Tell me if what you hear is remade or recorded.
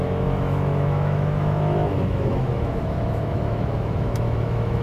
remade